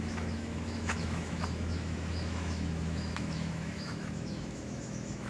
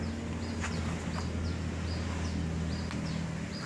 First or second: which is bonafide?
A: second